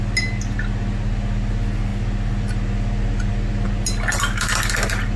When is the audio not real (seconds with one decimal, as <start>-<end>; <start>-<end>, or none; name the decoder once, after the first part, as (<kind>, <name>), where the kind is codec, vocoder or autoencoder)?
none